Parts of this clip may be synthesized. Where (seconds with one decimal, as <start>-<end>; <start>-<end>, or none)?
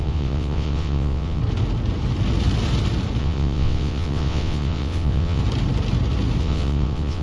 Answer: 0.0-1.4; 3.2-5.4; 6.4-7.2